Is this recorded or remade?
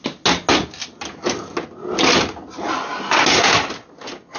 recorded